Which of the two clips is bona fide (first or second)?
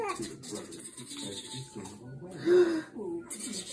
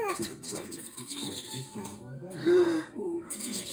first